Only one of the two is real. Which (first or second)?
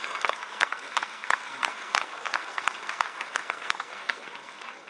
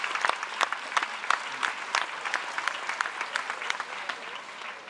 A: second